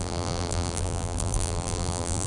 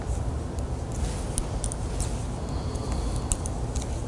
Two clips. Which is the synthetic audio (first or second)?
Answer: first